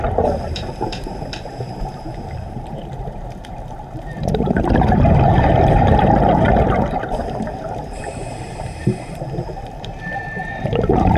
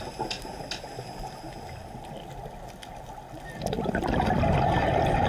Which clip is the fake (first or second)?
first